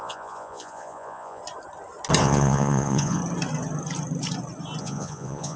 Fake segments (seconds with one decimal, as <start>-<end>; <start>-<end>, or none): 0.0-1.4; 2.2-3.2; 4.8-5.6